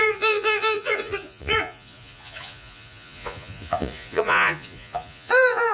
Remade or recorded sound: remade